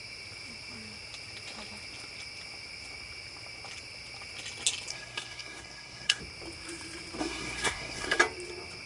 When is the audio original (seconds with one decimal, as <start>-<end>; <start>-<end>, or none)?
0.0-4.9; 6.2-7.2; 8.2-8.9